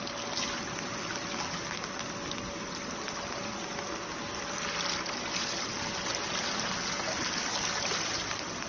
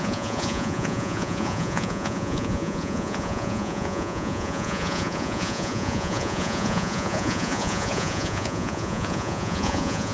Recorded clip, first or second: first